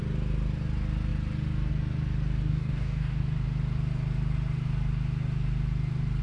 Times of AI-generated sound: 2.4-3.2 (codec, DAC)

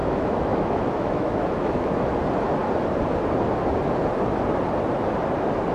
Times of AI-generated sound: 0.0-2.2 (autoencoder, DAC-VAE)